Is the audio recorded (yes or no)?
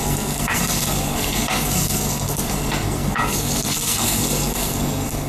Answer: no